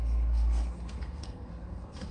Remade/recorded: remade